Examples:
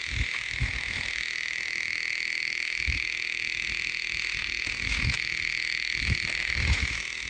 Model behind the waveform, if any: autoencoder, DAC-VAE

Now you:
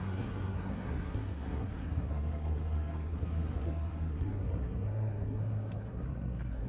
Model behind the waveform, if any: codec, SNAC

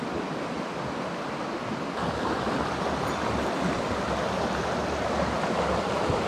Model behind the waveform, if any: none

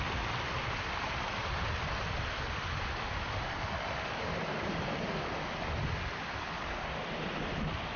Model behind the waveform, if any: none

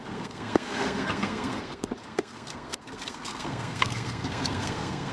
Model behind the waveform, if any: codec, SNAC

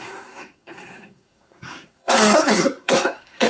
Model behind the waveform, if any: codec, SNAC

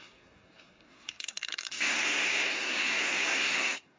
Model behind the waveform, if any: codec, SNAC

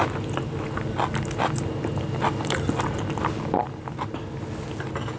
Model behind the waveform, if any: none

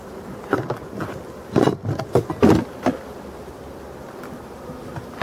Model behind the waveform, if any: none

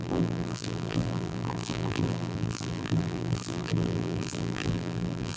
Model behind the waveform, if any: vocoder, BigVGAN v2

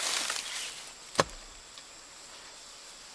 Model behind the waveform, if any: none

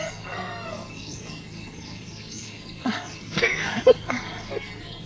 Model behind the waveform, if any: codec, SNAC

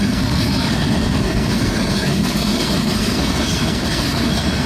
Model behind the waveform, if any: codec, SNAC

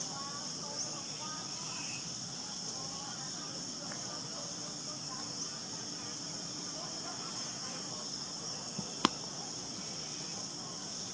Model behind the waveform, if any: none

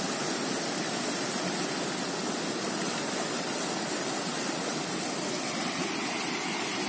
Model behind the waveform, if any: none